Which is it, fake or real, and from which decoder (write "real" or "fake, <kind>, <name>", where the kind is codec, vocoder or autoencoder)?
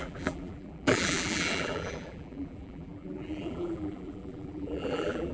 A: fake, vocoder, BigVGAN v2